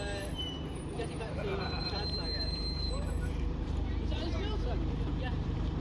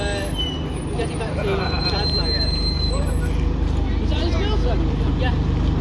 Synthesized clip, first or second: first